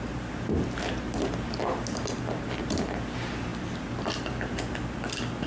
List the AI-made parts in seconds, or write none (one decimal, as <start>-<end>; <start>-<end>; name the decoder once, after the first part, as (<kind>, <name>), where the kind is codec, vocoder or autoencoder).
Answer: none